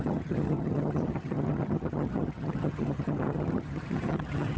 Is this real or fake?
fake